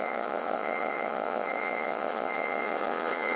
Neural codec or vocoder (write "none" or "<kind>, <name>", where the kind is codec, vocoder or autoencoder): vocoder, Vocos